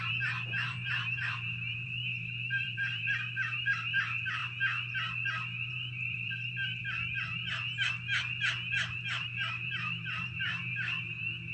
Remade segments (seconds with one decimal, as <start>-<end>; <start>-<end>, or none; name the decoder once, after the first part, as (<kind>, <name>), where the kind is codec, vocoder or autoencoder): 0.0-4.4 (vocoder, BigVGAN v2); 5.7-6.8; 9.2-11.5